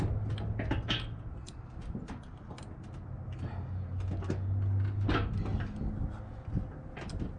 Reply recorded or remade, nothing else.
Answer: recorded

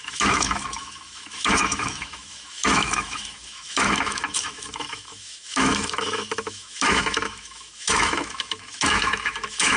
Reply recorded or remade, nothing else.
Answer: remade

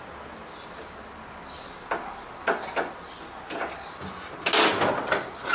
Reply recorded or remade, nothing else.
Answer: recorded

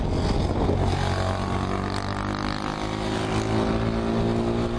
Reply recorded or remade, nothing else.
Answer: recorded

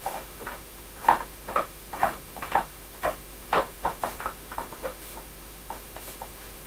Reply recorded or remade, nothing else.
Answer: remade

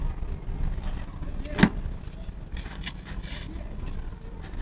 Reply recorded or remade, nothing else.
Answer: recorded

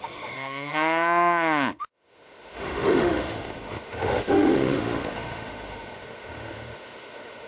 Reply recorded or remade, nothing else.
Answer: remade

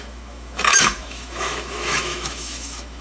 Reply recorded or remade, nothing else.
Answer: remade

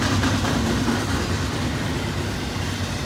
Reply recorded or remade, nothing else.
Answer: recorded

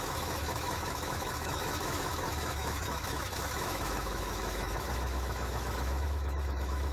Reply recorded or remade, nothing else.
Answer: remade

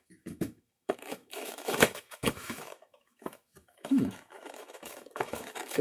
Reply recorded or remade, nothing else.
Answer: remade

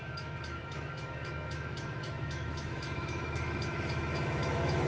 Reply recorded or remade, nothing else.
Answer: remade